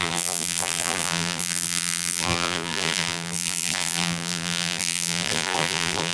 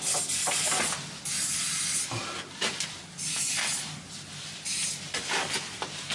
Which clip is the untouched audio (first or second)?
second